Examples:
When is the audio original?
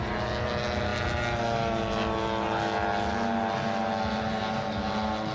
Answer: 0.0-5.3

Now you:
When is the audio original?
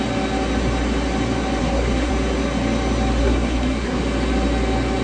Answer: 0.0-1.6; 2.1-3.2; 4.0-5.0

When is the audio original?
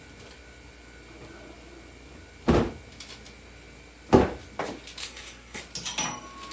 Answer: 0.0-5.0; 5.6-6.5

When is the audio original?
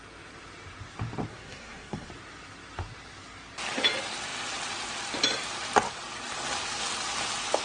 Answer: 0.0-1.3; 2.1-7.6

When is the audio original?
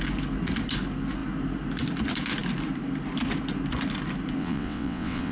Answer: 0.0-4.4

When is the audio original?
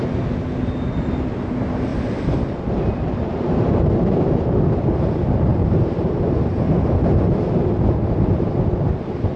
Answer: 0.0-9.4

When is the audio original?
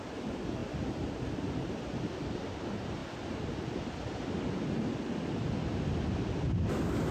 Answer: 0.0-7.1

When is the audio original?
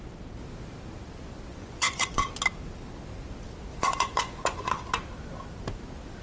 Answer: 0.0-1.5; 2.3-3.7; 4.9-6.2